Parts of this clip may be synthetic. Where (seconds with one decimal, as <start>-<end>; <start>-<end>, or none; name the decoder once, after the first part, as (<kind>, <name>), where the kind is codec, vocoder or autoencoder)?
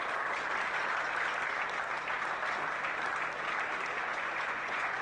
4.0-5.0 (vocoder, Vocos)